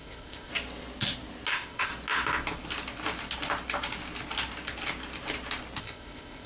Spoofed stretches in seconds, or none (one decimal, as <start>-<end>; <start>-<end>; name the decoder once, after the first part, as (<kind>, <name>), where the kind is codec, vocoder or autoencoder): 0.0-0.5 (codec, ZipCodec); 1.5-1.9; 5.8-6.5